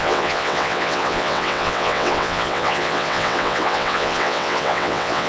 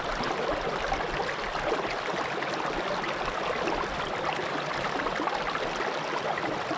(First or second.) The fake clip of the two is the first